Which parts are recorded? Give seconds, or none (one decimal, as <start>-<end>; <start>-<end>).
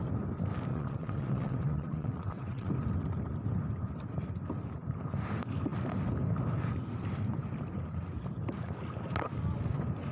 0.0-0.7; 2.7-10.1